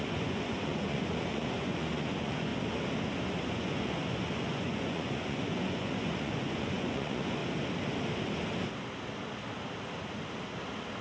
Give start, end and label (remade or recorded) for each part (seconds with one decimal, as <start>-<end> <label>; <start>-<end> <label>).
0.0-2.5 remade; 2.5-3.5 recorded; 3.5-7.4 remade; 7.4-11.0 recorded